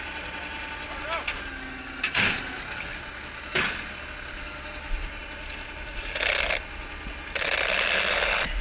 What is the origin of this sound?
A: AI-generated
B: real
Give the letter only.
B